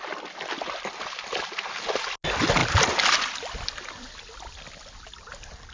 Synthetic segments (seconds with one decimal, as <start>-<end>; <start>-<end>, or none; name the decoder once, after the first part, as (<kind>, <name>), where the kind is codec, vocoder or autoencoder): none